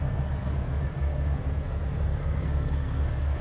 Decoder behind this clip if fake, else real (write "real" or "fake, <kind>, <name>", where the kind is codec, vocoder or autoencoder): fake, codec, SNAC